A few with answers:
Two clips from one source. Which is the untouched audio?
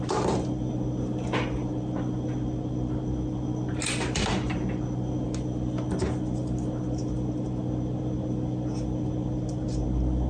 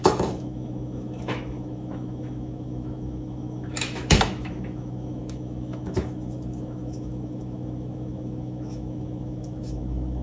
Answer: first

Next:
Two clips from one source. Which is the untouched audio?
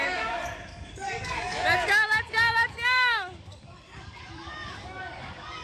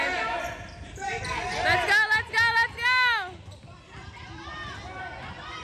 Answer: second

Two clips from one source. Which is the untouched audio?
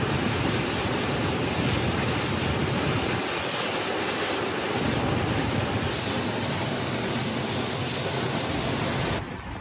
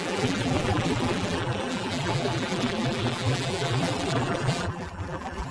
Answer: first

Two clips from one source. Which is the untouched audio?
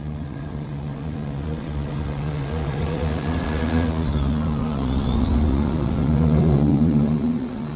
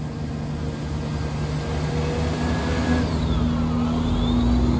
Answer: second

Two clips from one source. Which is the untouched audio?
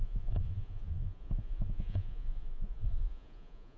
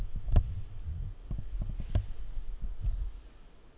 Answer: second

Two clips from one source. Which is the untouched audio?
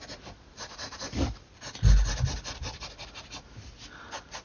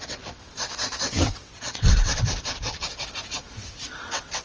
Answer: first